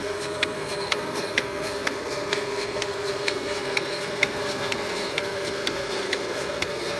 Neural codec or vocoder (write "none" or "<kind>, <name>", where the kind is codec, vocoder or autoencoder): codec, SNAC